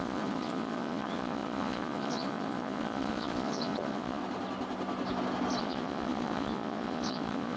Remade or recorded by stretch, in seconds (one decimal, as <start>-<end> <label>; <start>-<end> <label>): 0.0-4.2 remade; 4.2-5.6 recorded; 5.6-7.6 remade